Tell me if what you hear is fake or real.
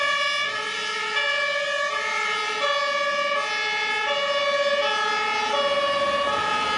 real